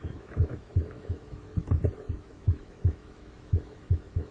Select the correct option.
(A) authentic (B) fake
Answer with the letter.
B